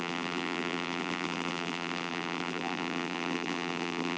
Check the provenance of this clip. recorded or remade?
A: remade